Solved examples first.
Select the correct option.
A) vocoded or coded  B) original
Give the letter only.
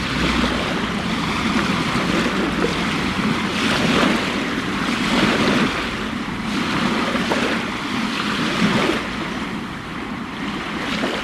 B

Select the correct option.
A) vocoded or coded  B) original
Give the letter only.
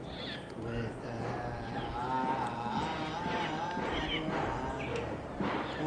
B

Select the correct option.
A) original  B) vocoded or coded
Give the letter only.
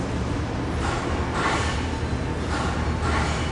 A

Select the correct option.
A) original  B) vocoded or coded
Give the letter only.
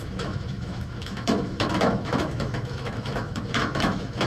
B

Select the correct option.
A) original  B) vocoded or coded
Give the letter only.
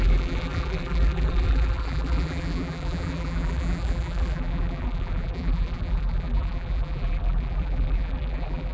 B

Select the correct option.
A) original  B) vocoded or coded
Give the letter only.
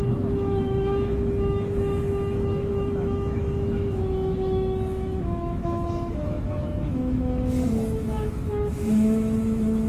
B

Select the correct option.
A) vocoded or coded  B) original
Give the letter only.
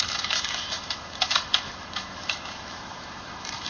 A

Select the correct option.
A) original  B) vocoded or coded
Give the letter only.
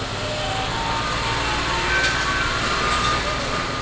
A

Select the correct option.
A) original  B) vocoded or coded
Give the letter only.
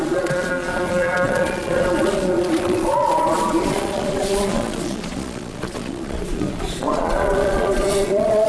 B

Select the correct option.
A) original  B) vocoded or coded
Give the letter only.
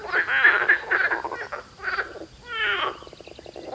A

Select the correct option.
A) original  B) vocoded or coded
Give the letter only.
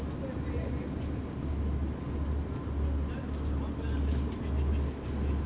A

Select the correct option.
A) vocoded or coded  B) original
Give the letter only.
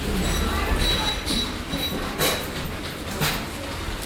B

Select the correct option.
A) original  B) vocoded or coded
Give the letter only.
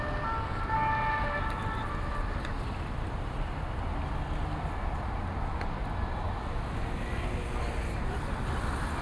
A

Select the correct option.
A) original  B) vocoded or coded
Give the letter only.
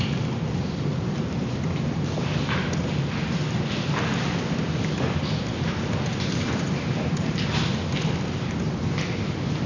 A